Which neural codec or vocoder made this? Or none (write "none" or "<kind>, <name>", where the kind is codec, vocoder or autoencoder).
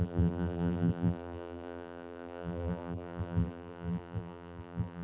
vocoder, BigVGAN v2